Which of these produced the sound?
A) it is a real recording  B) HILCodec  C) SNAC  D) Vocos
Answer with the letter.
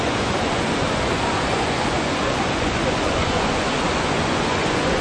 D